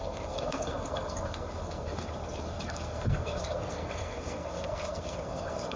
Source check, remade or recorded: remade